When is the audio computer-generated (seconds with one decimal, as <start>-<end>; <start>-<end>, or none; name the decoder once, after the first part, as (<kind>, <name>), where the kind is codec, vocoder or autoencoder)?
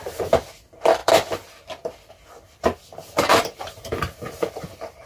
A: 1.0-3.6 (vocoder, BigVGAN v2)